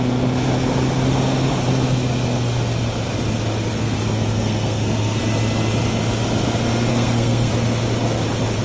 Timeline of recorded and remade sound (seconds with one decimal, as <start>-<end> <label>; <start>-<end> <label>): 0.0-3.8 recorded; 3.8-5.2 remade; 5.2-6.9 recorded; 6.9-7.5 remade; 7.5-8.6 recorded